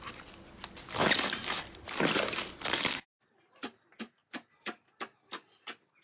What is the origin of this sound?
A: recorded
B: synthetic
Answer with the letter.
A